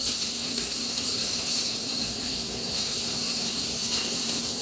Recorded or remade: remade